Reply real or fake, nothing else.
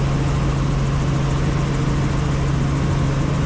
real